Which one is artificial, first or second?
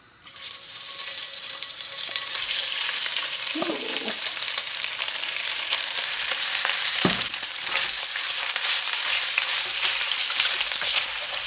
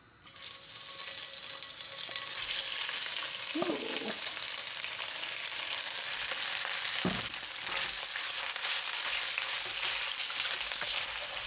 first